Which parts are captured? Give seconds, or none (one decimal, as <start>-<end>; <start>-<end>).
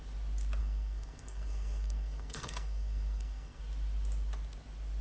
0.0-0.6; 3.6-5.0